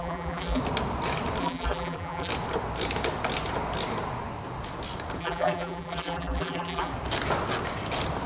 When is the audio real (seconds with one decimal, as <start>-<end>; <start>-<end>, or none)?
0.6-1.4; 2.3-5.2; 6.9-8.3